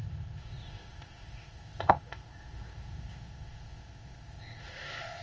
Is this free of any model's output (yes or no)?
no